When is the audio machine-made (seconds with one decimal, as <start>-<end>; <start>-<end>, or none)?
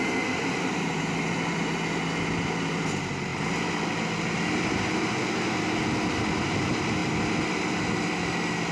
none